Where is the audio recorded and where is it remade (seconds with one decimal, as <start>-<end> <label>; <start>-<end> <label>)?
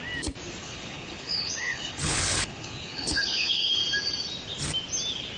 0.0-0.6 recorded; 0.6-3.8 remade; 3.8-5.4 recorded